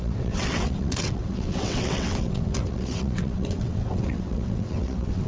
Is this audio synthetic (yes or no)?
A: yes